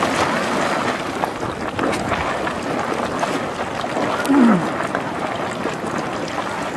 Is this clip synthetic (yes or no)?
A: no